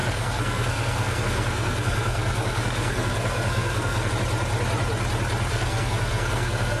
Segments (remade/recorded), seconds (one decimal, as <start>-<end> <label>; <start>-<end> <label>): 0.0-4.1 remade; 4.1-5.5 recorded; 5.5-6.8 remade